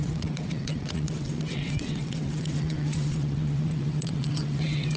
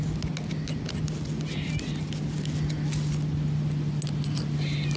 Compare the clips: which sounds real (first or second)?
second